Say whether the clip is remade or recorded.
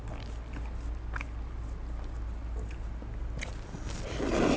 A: recorded